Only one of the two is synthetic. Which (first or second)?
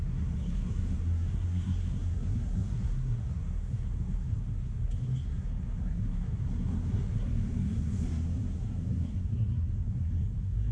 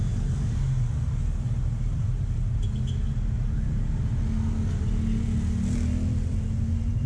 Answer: first